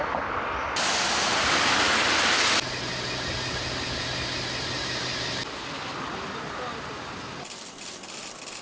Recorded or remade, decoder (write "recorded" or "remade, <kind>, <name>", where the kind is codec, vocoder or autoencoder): recorded